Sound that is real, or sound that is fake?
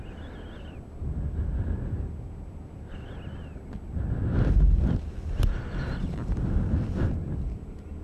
real